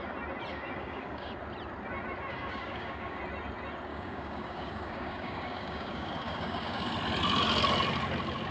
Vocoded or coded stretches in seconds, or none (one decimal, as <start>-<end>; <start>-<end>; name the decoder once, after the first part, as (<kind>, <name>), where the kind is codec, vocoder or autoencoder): 0.5-1.3 (codec, DAC); 2.3-3.2; 3.9-6.9